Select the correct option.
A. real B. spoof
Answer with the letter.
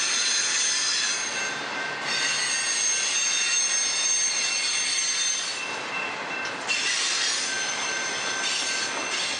A